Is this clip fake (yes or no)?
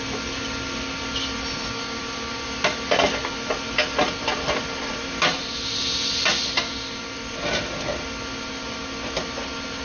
no